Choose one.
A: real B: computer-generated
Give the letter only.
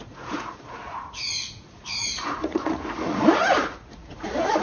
B